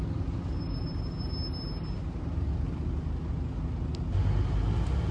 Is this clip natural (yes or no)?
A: yes